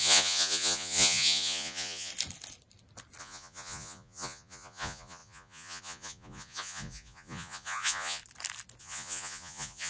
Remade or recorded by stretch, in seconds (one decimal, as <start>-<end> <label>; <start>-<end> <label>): 0.0-2.1 remade; 2.1-3.2 recorded; 3.2-8.2 remade; 8.2-8.8 recorded; 8.8-9.9 remade